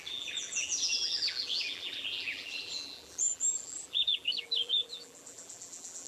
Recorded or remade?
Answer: remade